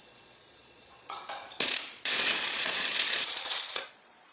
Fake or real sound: fake